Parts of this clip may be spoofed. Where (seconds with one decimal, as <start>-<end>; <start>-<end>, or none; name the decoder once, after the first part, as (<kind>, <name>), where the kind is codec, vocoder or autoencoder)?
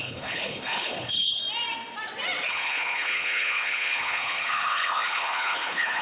0.0-1.4 (codec, HILCodec); 2.5-6.0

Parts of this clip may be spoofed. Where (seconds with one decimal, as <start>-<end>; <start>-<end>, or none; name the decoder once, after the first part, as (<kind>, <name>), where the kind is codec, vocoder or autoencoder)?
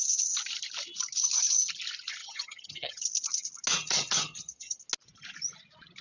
2.2-3.0 (vocoder, HiFi-GAN); 3.8-4.8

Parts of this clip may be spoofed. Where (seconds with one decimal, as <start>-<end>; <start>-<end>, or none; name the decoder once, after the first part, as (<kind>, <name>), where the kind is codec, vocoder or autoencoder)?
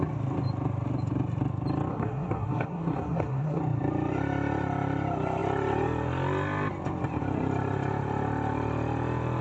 1.9-3.6 (codec, SNAC)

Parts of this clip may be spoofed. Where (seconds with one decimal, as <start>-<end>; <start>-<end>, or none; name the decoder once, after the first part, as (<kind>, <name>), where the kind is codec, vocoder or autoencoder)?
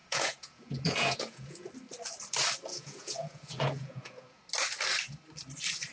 0.0-1.7 (vocoder, Vocos); 2.7-4.4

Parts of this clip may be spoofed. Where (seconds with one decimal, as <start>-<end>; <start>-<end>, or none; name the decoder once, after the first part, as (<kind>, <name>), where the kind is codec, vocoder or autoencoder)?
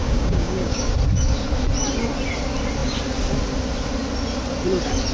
0.0-0.9 (codec, DAC)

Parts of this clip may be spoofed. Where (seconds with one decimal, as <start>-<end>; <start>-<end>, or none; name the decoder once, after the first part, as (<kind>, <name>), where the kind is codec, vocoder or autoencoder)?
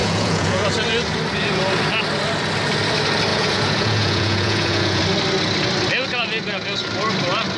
0.0-0.7 (vocoder, Vocos); 3.3-5.0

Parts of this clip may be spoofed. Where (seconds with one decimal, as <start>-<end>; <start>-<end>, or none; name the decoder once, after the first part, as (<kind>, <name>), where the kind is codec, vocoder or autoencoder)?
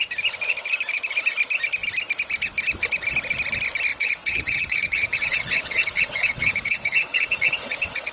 3.9-8.1 (vocoder, WaveNeXt)